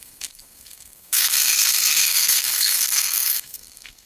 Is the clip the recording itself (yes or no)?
no